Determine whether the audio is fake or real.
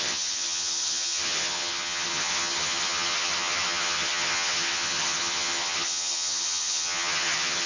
fake